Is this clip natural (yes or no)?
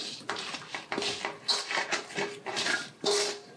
yes